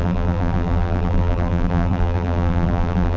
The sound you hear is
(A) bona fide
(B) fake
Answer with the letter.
B